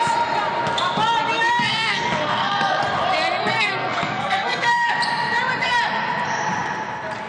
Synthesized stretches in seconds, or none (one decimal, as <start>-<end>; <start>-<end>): 1.7-2.8; 3.4-4.9